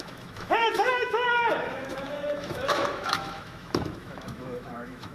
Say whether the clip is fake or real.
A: fake